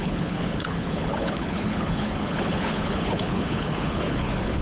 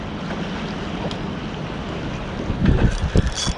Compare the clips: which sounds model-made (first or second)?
first